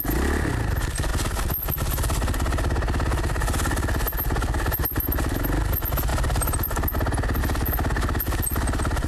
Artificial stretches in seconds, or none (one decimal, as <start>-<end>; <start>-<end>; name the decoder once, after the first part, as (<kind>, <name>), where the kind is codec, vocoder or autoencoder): none